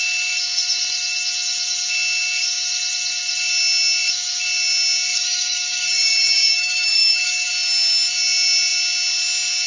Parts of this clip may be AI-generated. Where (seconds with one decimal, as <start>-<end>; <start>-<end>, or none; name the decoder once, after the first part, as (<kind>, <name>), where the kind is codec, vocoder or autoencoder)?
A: 5.1-7.5 (codec, DAC)